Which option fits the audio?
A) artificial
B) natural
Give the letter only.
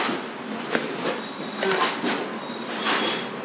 B